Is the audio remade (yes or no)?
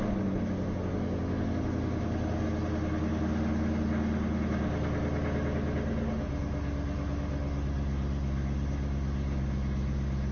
no